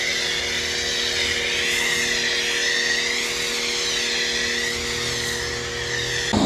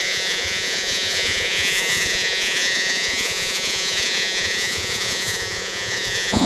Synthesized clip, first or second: second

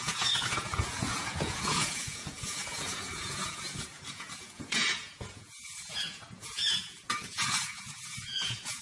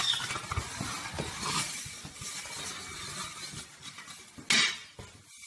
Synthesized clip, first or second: first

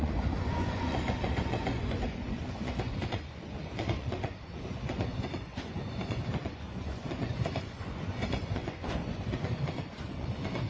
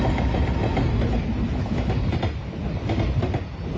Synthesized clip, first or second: first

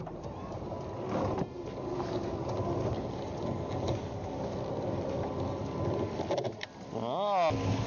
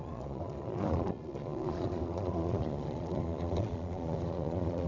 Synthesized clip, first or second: second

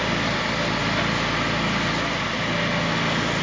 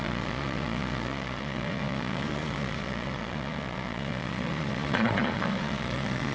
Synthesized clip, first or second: second